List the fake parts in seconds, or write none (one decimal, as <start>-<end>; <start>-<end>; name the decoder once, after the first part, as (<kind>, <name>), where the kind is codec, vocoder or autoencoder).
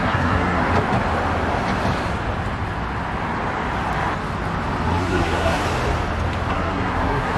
0.0-0.6 (codec, SNAC); 5.0-5.6; 6.5-7.4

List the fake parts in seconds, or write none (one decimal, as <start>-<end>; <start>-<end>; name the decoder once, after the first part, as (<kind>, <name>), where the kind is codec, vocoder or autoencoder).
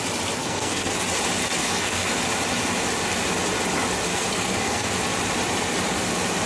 0.4-0.9 (codec, SNAC); 1.6-2.2; 4.1-4.9